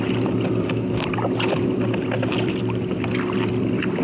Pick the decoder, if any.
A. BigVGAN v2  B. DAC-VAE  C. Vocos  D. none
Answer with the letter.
A